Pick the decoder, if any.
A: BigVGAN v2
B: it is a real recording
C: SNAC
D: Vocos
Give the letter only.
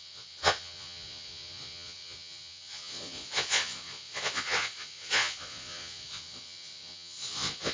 D